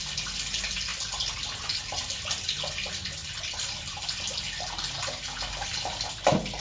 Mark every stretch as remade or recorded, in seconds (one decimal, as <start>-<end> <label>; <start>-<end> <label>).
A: 0.0-6.6 recorded